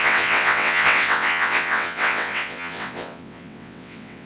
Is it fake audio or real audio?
fake